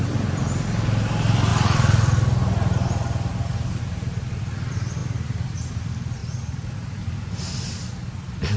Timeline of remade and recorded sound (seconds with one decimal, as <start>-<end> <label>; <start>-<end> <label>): 0.0-1.5 recorded; 1.5-3.8 remade; 3.8-5.0 recorded; 5.0-5.7 remade; 5.7-6.2 recorded; 6.2-7.3 remade; 7.3-8.6 recorded